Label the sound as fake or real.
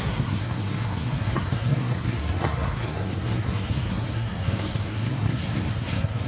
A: fake